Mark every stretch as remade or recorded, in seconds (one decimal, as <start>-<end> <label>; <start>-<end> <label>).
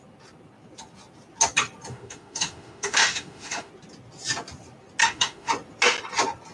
0.0-1.9 recorded; 1.9-3.7 remade; 3.7-5.0 recorded; 5.0-5.5 remade; 5.5-6.5 recorded